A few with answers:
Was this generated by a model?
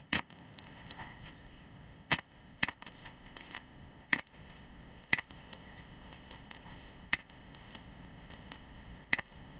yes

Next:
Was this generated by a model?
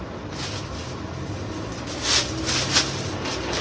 no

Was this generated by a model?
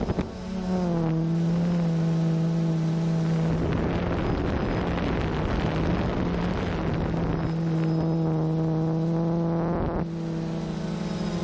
no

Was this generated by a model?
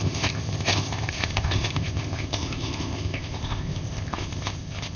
yes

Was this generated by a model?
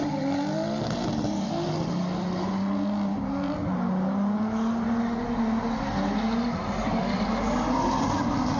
no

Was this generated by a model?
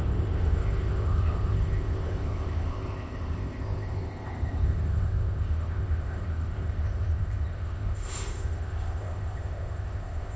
yes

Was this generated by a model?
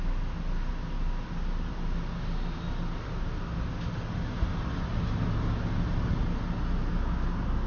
no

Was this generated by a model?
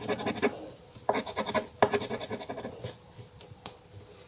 no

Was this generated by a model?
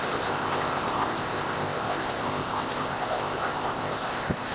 yes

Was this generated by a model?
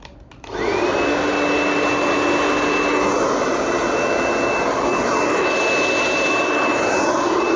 no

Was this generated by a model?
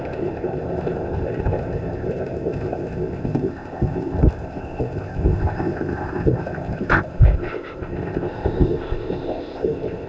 yes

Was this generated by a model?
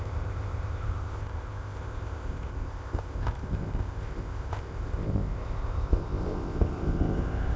yes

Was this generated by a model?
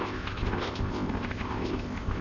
yes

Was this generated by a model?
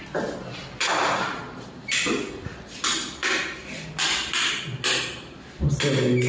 no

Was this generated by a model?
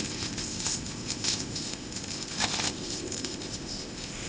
yes